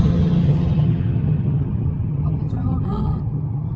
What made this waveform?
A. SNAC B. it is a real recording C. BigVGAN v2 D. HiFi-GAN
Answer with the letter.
D